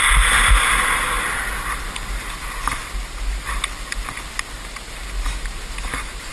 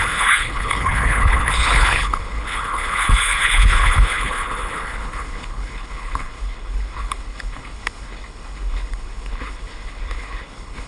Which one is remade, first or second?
second